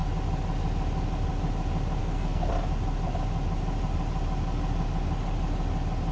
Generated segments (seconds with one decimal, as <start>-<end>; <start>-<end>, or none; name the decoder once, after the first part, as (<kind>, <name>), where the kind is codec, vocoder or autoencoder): 2.0-2.5 (codec, SNAC)